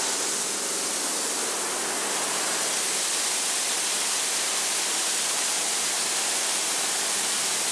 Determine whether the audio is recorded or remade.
recorded